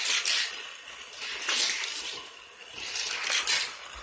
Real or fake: real